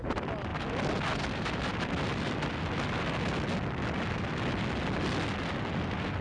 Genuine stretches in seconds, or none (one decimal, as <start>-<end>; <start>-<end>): 0.0-6.2